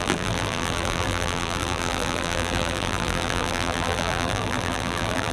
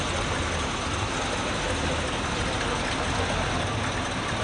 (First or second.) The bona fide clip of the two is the second